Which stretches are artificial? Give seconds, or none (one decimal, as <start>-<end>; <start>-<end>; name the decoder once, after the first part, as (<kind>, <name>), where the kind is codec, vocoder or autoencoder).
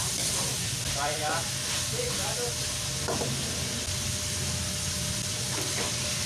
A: 0.0-1.2 (vocoder, BigVGAN v2); 5.0-6.3